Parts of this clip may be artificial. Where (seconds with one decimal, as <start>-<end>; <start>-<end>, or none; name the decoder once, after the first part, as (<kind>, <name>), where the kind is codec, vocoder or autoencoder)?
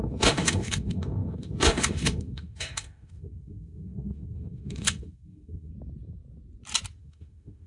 0.0-5.7 (autoencoder, DAC-VAE); 7.0-7.7